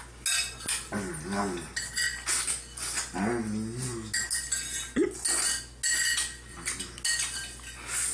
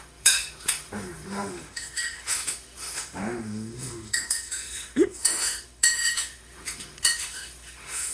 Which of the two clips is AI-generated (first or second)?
second